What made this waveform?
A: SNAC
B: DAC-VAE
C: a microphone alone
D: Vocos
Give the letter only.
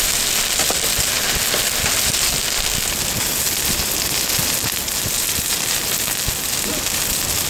C